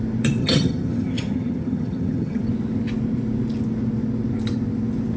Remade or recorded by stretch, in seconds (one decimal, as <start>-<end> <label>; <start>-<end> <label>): 0.0-0.4 recorded; 0.4-2.4 remade; 2.4-5.2 recorded